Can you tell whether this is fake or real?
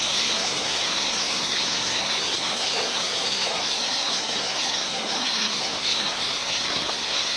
fake